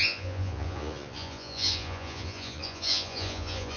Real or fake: fake